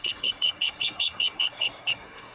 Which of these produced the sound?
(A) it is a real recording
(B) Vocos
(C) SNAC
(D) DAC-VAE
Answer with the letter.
C